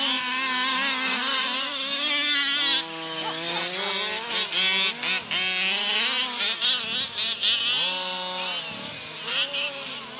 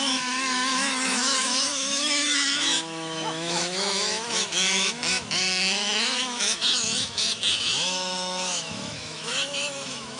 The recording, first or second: first